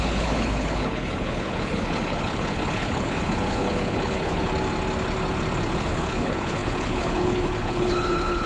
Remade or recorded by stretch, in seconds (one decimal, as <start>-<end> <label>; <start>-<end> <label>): 0.0-4.5 remade; 4.5-5.8 recorded; 5.8-8.5 remade